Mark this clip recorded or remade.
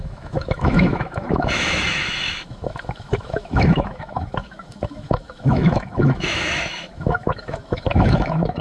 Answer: remade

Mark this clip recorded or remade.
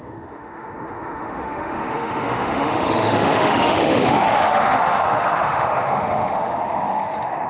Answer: remade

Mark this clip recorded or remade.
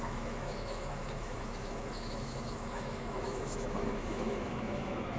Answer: remade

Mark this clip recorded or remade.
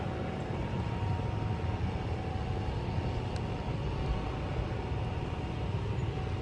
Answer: recorded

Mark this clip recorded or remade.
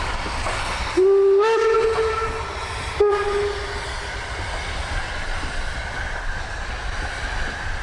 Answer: recorded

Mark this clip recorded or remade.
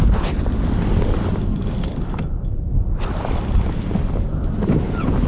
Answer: recorded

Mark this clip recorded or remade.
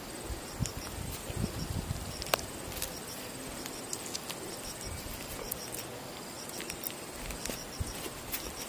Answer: recorded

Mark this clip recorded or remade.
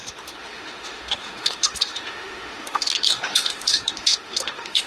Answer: remade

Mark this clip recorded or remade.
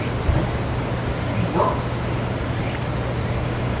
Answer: recorded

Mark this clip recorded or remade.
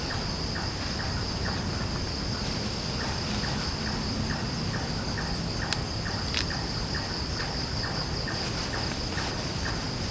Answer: recorded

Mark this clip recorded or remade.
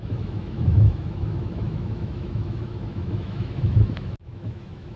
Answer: remade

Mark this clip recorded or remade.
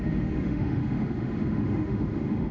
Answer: remade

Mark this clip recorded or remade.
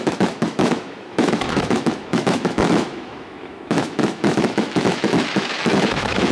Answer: remade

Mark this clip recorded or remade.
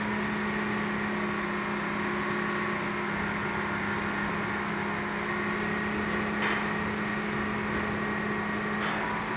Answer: recorded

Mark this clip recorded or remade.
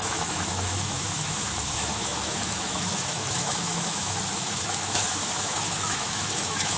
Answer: remade